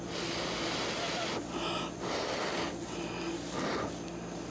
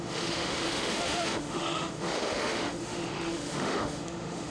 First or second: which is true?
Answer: first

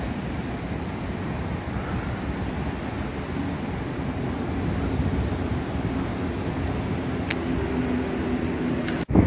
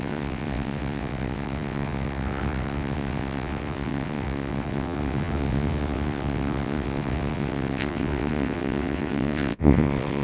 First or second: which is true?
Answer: first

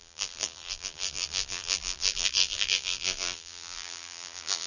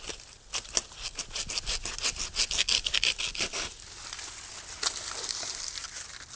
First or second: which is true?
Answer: second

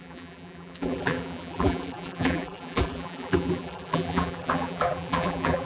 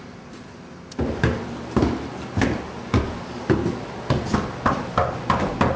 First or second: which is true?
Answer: second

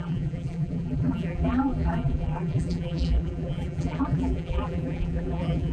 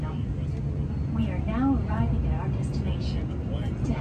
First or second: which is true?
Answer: second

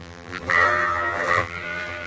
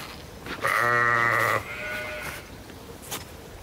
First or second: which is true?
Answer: second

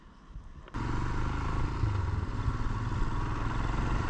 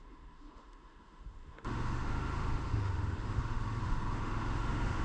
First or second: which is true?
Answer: first